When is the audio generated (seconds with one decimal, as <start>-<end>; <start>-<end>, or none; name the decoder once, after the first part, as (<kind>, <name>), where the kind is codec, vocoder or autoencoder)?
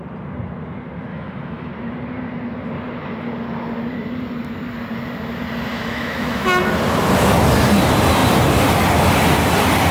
1.1-1.7 (autoencoder, DAC-VAE); 5.7-6.6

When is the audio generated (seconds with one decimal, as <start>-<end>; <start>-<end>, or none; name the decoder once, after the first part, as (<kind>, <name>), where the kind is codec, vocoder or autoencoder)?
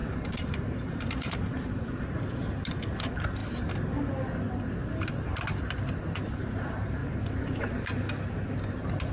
0.0-2.2 (vocoder, BigVGAN v2)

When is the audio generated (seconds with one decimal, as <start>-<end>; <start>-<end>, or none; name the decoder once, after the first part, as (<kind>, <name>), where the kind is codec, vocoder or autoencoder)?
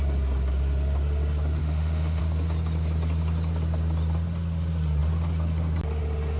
1.6-2.2 (autoencoder, DAC-VAE)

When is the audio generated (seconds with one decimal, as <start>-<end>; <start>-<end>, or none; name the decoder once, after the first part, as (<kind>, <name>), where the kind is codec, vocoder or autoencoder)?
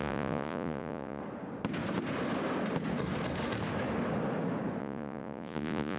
0.0-1.2 (vocoder, Vocos); 4.8-6.0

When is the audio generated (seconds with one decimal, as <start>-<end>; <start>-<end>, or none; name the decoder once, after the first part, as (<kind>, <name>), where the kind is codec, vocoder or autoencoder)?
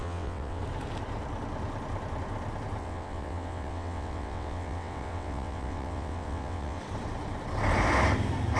0.0-0.6 (vocoder, WaveNeXt); 2.8-6.8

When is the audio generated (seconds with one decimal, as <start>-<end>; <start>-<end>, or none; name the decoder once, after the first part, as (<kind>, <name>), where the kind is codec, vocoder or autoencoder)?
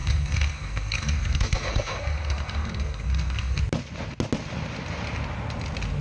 0.0-3.6 (codec, SNAC)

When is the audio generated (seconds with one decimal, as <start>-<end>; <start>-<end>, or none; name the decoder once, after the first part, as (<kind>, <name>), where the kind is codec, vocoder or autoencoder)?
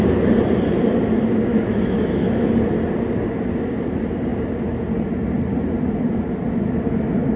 1.5-2.5 (autoencoder, DAC-VAE)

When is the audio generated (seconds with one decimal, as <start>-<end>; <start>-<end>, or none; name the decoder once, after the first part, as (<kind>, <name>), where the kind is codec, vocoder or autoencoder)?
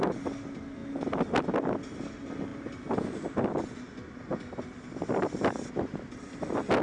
none